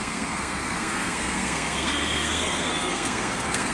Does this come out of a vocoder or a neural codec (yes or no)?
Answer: yes